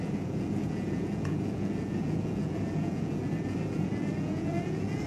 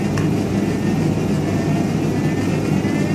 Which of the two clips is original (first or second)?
second